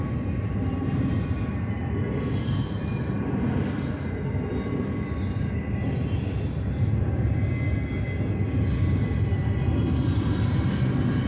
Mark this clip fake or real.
real